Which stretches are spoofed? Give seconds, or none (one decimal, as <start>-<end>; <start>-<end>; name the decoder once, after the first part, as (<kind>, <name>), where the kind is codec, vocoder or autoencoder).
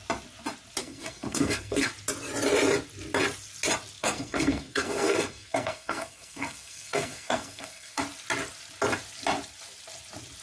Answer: 0.8-1.9 (codec, SNAC); 4.0-8.0